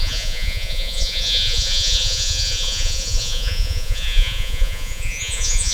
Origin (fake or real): fake